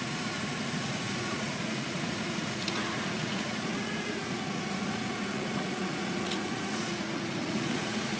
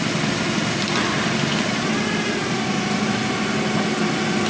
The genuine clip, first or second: second